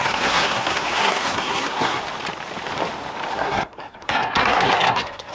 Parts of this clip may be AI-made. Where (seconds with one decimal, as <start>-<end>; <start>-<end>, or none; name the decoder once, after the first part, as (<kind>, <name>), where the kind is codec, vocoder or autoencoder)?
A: 0.0-2.0 (codec, SNAC); 3.3-5.3